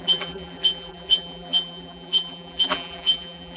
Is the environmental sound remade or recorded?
remade